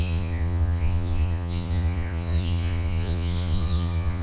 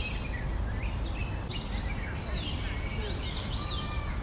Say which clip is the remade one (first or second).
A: first